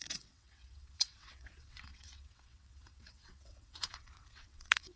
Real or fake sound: fake